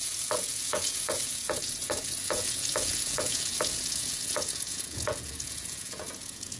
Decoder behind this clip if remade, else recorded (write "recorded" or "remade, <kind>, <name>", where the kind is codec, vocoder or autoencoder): remade, vocoder, Vocos